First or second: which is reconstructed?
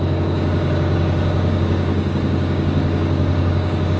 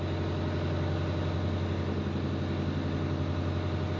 first